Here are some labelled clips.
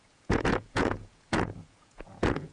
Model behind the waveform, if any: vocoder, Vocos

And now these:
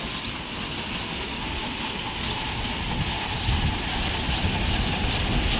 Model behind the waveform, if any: none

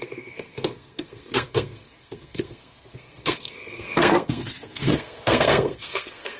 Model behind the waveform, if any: codec, SNAC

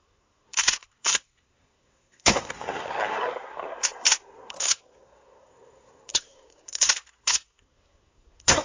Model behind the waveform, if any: codec, SNAC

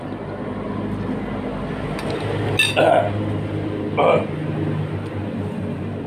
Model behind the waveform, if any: none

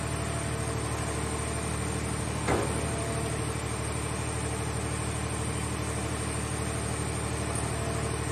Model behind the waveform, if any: none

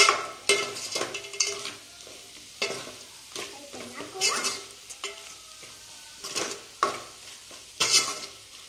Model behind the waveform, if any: none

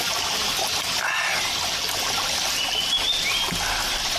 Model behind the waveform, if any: none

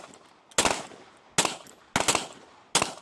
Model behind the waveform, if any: none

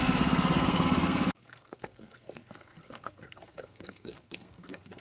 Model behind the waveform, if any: codec, SNAC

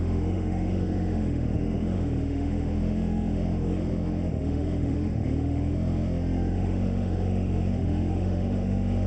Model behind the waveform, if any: autoencoder, DAC-VAE